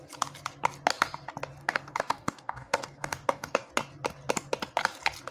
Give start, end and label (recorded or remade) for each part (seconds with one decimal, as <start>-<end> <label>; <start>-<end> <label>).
0.0-1.6 recorded; 1.6-3.7 remade; 3.7-5.3 recorded